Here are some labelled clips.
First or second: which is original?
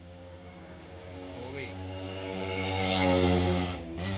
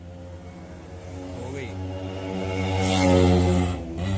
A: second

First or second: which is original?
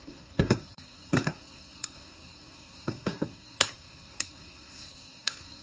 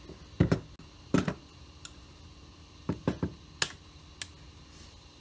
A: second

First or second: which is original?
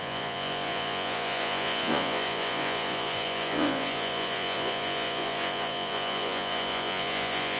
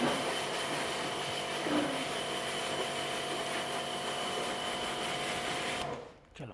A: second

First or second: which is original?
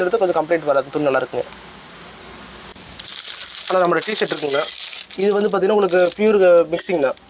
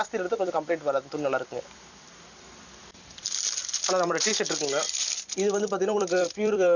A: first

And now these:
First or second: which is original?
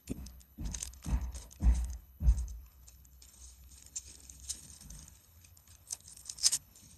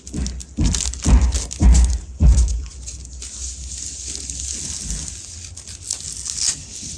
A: second